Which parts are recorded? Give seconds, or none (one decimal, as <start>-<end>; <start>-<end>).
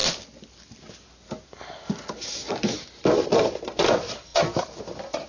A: 0.0-5.3